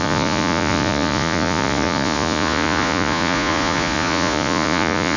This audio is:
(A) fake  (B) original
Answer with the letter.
A